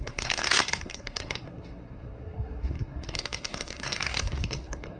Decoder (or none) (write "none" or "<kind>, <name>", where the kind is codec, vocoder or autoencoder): codec, SNAC